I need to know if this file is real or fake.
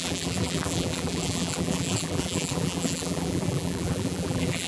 fake